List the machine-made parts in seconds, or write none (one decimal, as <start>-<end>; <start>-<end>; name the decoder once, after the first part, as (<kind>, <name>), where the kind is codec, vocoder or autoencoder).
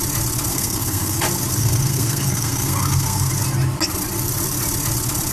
0.5-1.2 (codec, SNAC); 1.6-3.3